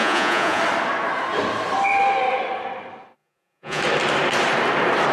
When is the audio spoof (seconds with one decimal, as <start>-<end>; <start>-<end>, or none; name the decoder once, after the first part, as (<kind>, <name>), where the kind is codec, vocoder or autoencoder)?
0.0-0.6 (vocoder, Vocos); 3.2-3.8